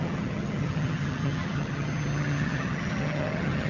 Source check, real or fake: fake